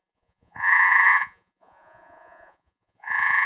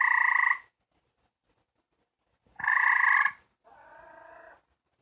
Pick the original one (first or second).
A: second